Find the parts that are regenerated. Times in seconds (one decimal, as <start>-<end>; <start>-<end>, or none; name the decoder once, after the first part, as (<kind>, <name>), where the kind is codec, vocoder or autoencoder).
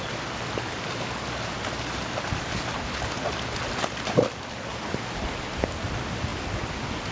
none